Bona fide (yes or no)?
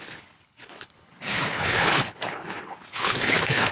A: no